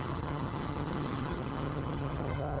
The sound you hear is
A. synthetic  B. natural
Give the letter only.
A